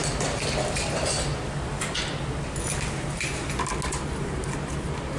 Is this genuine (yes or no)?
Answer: yes